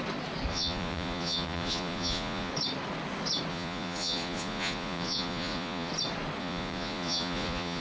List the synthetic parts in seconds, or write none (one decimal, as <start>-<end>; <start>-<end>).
0.5-2.5; 3.5-5.9; 6.4-7.8